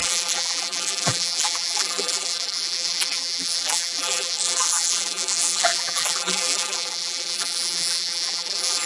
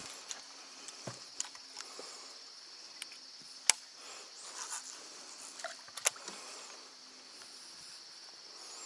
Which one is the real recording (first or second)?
second